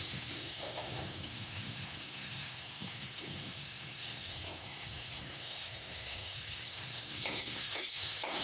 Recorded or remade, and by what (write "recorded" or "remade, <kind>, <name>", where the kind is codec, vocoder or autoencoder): remade, codec, SNAC